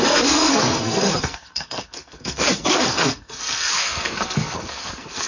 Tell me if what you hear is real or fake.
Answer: fake